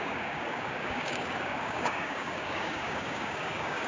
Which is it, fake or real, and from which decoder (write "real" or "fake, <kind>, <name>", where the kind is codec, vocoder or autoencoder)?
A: fake, codec, DAC